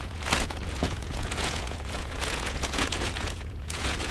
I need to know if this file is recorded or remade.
remade